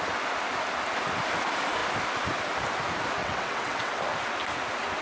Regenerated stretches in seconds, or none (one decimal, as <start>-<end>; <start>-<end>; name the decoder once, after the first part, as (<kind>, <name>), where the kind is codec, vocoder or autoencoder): 3.2-4.0 (vocoder, WaveNeXt)